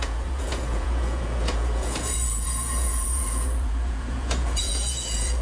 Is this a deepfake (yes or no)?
yes